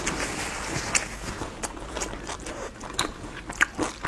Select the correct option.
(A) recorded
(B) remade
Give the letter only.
A